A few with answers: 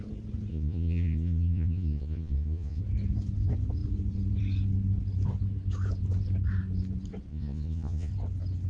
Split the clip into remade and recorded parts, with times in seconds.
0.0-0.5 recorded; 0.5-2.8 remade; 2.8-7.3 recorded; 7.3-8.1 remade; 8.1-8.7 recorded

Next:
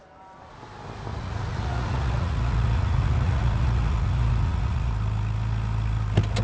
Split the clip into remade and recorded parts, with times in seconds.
0.0-1.1 recorded; 1.1-4.9 remade; 4.9-6.4 recorded

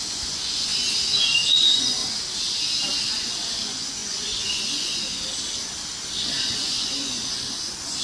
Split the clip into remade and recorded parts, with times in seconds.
0.0-0.7 remade; 0.7-1.5 recorded; 1.5-2.0 remade; 2.0-3.0 recorded; 3.0-5.1 remade; 5.1-6.1 recorded; 6.1-8.0 remade

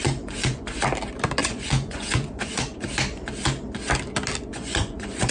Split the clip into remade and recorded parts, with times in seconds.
0.0-0.8 remade; 0.8-1.4 recorded; 1.4-2.9 remade; 2.9-4.5 recorded; 4.5-5.3 remade

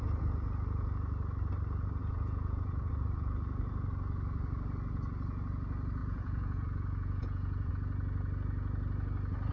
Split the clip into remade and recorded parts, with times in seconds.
0.0-2.0 recorded; 2.0-2.9 remade; 2.9-6.0 recorded; 6.0-7.7 remade; 7.7-9.5 recorded

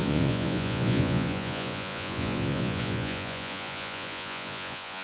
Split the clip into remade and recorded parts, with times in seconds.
0.0-5.0 remade

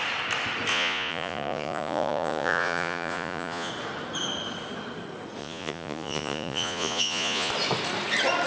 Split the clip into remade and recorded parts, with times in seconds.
0.0-0.7 recorded; 0.7-3.7 remade; 3.7-5.4 recorded; 5.4-7.5 remade; 7.5-8.5 recorded